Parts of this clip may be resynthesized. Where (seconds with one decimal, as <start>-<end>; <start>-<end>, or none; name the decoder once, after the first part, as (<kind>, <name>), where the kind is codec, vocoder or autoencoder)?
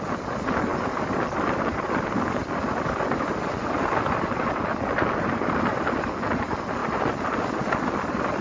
none